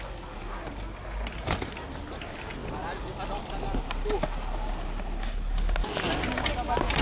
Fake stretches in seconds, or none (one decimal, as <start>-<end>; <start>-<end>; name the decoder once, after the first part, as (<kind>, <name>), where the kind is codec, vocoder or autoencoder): none